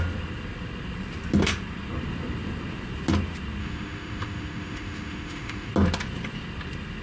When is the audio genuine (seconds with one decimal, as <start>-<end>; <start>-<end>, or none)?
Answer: 0.0-3.6; 5.7-7.0